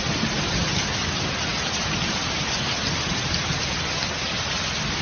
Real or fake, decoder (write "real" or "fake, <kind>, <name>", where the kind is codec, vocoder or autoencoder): real